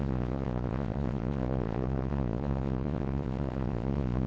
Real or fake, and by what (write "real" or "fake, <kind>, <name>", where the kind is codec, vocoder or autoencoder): fake, vocoder, Vocos